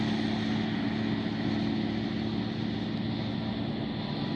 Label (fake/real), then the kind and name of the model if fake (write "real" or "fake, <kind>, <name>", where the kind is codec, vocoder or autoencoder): real